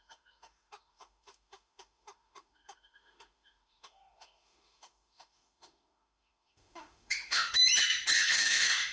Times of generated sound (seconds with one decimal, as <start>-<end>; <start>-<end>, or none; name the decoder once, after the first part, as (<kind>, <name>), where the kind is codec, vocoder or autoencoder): 0.0-7.6 (autoencoder, DAC-VAE); 8.2-8.9